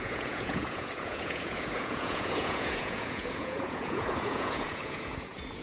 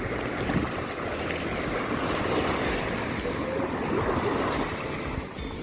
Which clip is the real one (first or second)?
second